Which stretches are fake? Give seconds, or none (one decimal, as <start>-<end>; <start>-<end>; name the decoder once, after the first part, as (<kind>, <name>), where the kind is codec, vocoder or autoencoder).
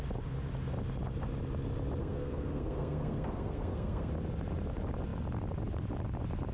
2.0-4.1 (codec, SNAC)